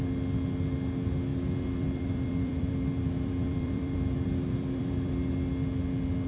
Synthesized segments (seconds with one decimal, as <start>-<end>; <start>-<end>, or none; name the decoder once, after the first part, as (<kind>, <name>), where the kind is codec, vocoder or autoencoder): 1.3-5.1 (vocoder, BigVGAN v2)

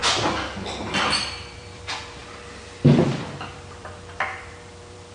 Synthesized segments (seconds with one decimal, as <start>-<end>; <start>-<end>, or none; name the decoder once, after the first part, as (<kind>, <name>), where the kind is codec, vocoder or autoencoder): 1.2-2.2 (vocoder, BigVGAN v2); 3.1-5.1

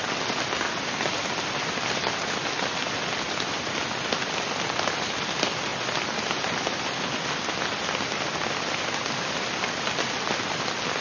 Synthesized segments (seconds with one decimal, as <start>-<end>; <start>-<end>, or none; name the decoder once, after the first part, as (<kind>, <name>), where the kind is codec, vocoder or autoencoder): none

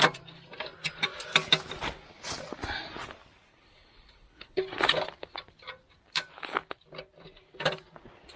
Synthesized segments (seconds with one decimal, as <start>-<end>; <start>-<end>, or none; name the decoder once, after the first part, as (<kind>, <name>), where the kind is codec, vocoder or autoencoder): 3.5-4.6 (codec, HILCodec)

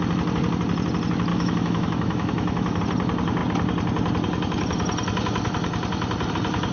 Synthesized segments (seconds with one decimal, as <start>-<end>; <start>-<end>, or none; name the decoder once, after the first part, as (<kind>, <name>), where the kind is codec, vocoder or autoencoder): 1.3-2.8 (autoencoder, DAC-VAE)

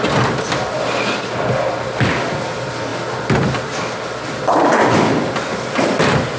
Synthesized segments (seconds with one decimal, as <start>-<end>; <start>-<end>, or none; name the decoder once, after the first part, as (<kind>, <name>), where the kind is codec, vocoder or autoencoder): none